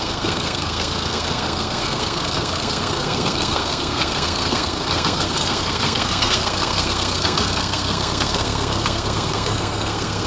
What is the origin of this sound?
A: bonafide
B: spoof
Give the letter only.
B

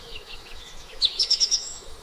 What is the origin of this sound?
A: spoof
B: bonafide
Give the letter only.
A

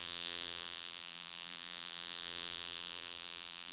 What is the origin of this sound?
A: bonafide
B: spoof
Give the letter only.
B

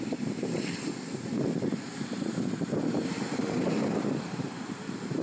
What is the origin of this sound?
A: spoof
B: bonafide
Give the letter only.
A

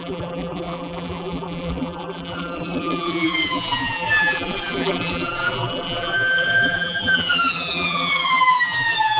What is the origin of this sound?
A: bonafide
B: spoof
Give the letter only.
B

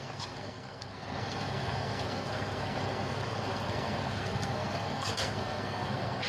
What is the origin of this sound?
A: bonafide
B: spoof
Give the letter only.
B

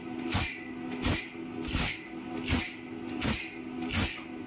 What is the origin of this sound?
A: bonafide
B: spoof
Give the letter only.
A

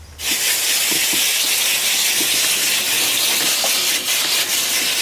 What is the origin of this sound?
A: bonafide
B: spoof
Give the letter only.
A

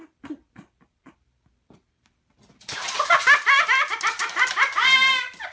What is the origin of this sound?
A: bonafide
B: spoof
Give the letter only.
B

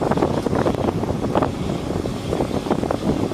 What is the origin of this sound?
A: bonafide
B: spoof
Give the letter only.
A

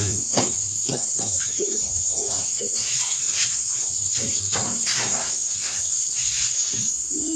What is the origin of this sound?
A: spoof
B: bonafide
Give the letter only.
A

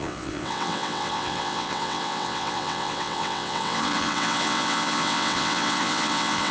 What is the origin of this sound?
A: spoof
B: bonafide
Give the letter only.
A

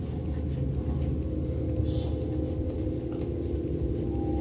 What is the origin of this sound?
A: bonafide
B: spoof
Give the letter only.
A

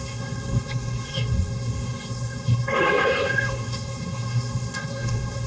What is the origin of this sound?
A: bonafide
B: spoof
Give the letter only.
B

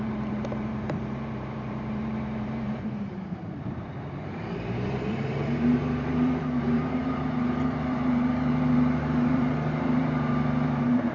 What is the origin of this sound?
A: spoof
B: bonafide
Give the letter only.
A